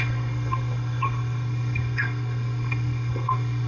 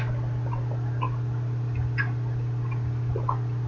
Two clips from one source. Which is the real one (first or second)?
second